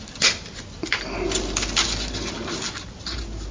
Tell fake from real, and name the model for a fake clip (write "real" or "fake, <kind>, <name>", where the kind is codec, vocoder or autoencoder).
real